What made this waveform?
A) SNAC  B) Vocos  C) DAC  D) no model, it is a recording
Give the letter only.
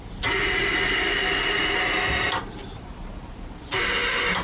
D